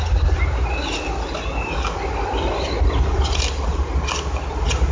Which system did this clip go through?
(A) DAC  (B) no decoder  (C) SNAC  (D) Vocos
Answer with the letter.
B